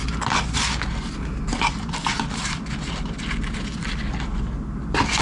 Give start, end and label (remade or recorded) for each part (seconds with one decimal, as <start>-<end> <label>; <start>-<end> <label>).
0.0-5.2 recorded